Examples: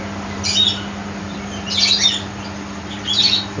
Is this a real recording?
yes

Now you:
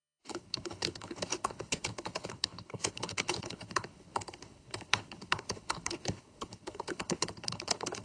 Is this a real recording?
no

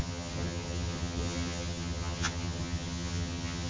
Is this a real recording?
no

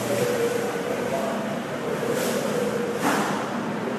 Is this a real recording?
yes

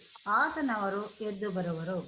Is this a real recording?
yes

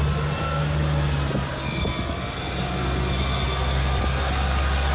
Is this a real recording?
yes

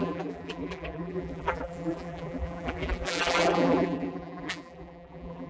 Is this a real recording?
no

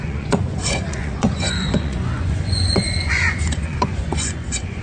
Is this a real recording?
no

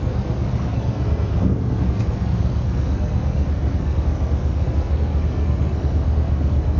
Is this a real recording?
no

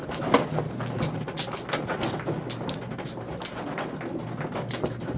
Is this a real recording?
yes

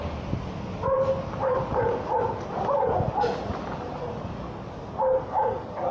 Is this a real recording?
yes